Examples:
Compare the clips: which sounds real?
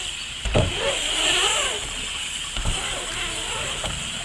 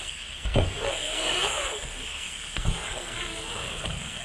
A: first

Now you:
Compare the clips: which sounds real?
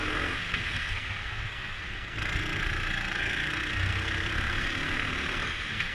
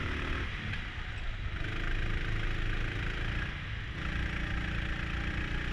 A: second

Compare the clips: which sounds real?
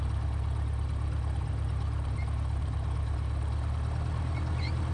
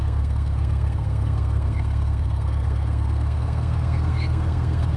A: first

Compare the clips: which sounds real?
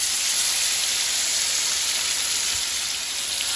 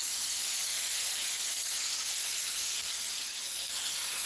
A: first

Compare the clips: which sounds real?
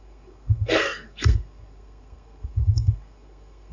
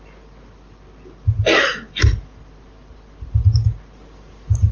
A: second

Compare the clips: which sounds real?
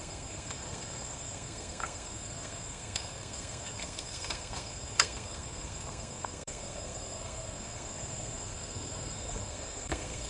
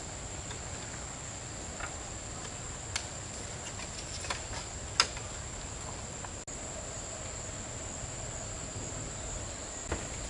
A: second